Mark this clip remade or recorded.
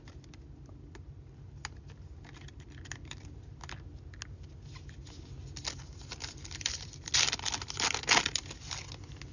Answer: recorded